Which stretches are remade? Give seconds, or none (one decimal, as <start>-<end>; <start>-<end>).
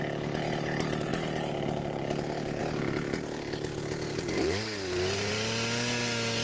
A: 4.1-5.3